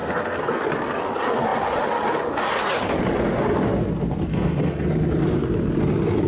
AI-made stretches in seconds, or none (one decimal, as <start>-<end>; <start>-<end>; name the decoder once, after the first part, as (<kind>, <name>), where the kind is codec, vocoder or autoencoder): 0.0-0.6 (codec, SNAC); 4.3-4.9